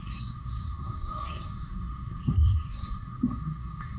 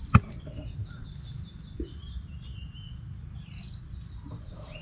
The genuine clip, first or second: second